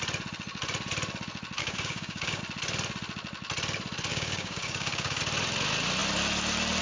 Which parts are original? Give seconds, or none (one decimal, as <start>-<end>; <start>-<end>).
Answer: 0.0-1.6; 2.4-4.1; 5.2-6.8